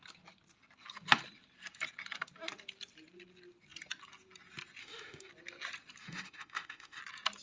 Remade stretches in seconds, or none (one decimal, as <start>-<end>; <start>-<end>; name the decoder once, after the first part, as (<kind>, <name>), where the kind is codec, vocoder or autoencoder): 4.8-5.3 (autoencoder, DAC-VAE); 6.0-7.0